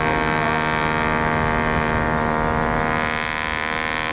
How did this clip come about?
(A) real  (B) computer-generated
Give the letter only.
A